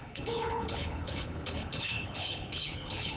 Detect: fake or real fake